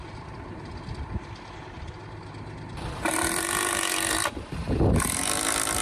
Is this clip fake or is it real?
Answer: real